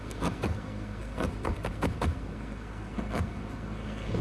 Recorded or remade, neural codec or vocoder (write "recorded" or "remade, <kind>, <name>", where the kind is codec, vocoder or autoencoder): remade, codec, SNAC